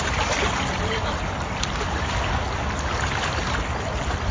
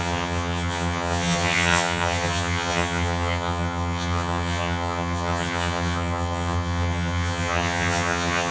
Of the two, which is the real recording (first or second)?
first